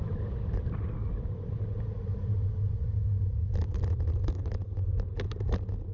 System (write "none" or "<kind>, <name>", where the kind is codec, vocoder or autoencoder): none